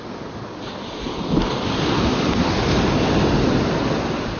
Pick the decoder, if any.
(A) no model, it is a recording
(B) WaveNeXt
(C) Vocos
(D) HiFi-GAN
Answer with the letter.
A